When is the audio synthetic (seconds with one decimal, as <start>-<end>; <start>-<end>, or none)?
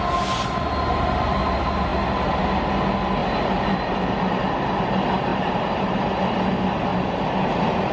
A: 3.2-4.3; 5.3-5.9; 6.9-7.9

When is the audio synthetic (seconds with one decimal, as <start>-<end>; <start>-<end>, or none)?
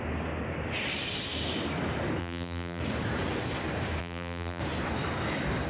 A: 2.2-2.8; 4.0-4.6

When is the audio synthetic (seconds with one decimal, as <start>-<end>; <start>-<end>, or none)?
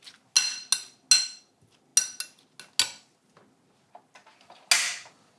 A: none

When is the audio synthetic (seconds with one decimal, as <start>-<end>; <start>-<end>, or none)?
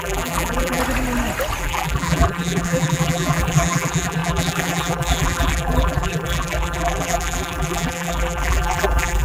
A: 0.0-0.8; 1.6-9.2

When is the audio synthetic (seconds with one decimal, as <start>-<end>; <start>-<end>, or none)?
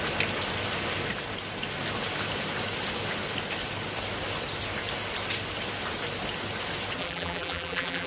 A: 7.0-8.1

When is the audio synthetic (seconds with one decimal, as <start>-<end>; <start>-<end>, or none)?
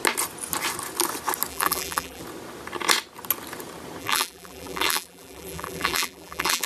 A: 1.5-2.2; 4.0-6.7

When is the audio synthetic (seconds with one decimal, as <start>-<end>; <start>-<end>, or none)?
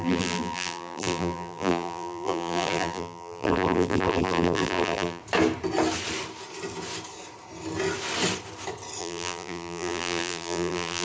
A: 0.0-5.2; 9.0-11.0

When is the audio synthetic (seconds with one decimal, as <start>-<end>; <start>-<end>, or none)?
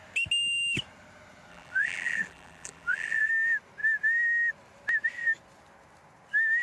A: 1.5-3.3